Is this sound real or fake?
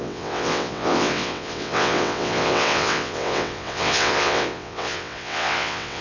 fake